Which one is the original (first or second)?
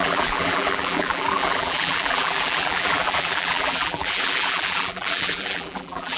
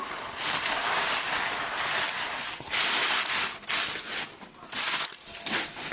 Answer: second